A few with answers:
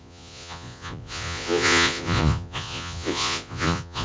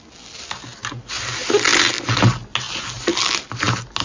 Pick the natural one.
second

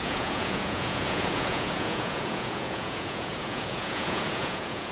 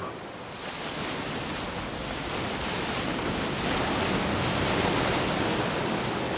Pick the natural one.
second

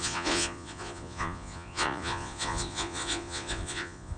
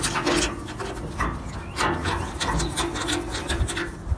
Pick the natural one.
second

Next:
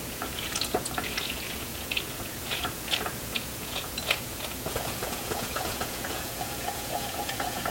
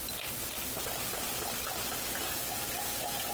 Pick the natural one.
second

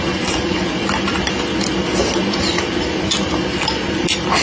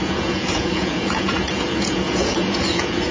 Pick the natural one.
first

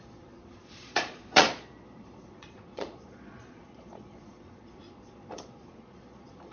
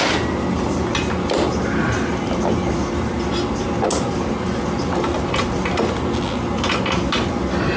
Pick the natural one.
second